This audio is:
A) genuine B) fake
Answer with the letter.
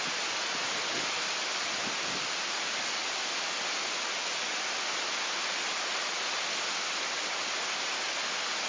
A